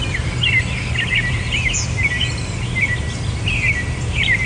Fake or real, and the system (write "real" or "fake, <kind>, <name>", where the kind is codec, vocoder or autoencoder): real